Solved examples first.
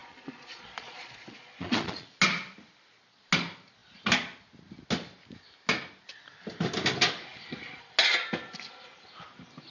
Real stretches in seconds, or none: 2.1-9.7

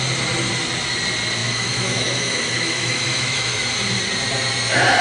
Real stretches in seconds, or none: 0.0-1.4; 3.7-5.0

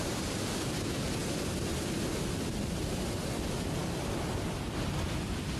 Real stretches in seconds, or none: 0.0-5.6

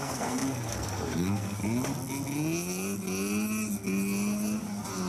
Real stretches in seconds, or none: 1.6-5.1